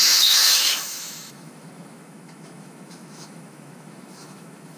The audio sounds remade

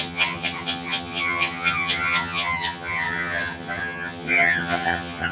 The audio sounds remade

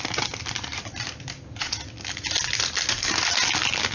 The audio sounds recorded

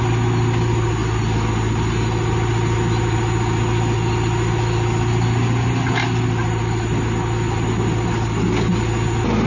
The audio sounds recorded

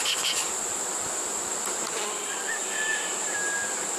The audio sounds recorded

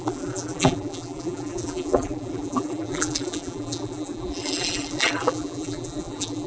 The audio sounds remade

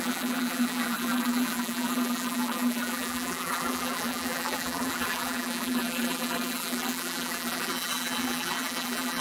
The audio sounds remade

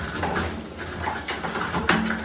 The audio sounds recorded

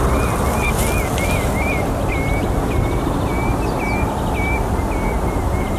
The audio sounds recorded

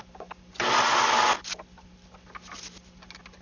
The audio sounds recorded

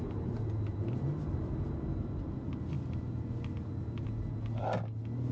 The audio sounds recorded